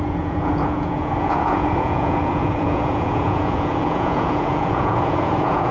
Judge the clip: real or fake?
fake